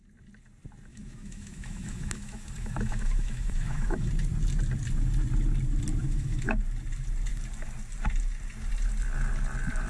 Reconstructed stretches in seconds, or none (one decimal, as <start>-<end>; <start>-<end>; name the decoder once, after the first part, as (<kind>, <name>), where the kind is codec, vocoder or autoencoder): 0.9-4.1 (autoencoder, DAC-VAE); 6.0-6.6